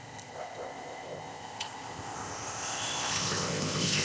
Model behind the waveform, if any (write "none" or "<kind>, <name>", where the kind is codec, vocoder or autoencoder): codec, ZipCodec